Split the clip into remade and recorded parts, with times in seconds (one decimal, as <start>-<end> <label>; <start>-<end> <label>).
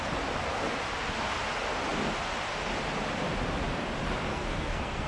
0.0-4.3 recorded; 4.3-5.1 remade